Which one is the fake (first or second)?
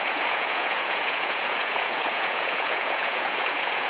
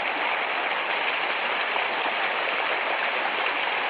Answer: first